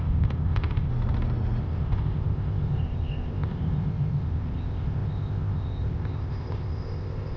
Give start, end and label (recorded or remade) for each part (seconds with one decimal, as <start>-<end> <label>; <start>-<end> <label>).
0.0-0.9 remade; 0.9-1.6 recorded; 1.6-7.4 remade